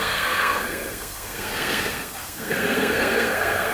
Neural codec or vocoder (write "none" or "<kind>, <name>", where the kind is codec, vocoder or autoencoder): codec, SNAC